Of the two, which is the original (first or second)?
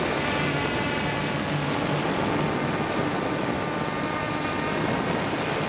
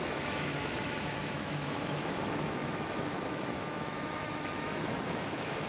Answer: first